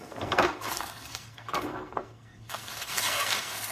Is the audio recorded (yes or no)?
no